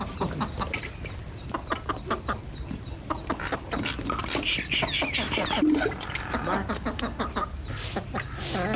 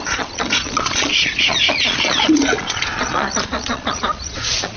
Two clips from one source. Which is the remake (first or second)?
second